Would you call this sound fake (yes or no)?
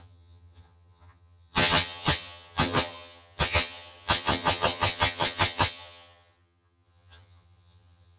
yes